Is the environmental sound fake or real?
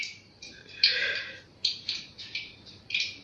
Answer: fake